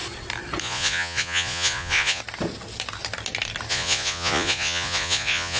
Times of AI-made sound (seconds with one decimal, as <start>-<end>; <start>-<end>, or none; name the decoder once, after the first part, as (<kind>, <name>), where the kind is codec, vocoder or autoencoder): 0.6-2.2 (vocoder, Vocos); 3.7-5.6